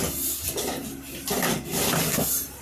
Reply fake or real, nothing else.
real